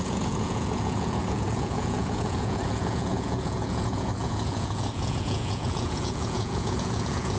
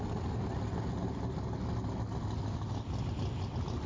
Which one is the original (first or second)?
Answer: second